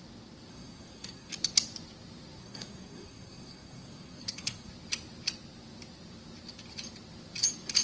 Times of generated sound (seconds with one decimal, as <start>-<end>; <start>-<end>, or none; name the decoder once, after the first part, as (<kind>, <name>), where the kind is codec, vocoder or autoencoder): 0.5-1.3 (codec, SNAC); 2.4-4.7